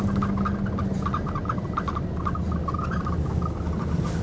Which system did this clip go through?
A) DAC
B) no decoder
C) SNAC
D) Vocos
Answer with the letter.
B